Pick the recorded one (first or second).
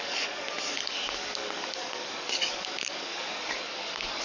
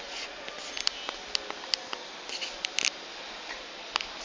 second